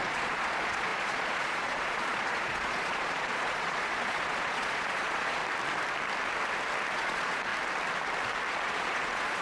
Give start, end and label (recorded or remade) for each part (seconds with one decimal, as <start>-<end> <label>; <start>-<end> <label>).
0.0-5.4 remade; 5.4-6.9 recorded; 6.9-7.5 remade; 7.5-8.5 recorded; 8.5-9.4 remade